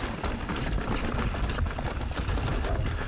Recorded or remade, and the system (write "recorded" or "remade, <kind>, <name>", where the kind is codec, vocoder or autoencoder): recorded